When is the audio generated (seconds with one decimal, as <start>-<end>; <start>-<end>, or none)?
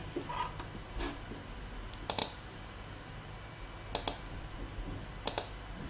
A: 2.2-3.6